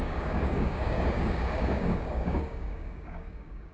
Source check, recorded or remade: remade